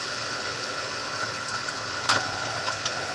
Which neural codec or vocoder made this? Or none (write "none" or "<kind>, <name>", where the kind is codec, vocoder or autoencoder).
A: codec, HILCodec